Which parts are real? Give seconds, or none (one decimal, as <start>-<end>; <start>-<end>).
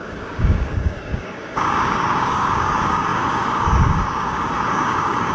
none